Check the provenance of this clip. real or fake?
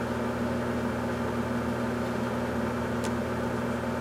real